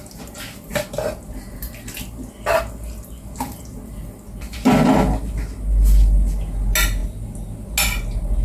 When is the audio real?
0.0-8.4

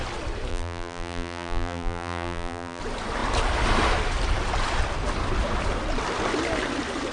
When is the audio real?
0.0-0.5; 2.8-7.1

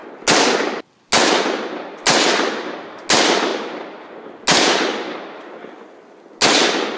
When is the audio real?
0.0-7.0